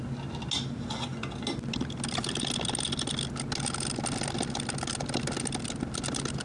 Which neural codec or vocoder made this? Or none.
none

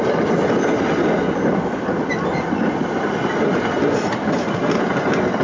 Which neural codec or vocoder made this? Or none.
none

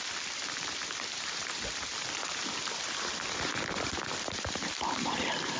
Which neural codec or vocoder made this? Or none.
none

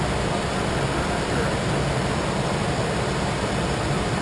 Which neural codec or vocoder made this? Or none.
none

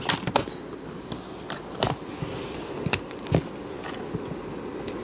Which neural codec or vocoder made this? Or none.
none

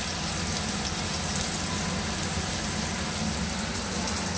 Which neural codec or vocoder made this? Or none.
none